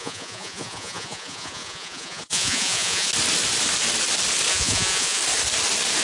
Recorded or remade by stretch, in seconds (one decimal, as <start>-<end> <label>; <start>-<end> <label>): 0.0-3.1 remade; 3.1-4.5 recorded; 4.5-5.2 remade; 5.2-6.0 recorded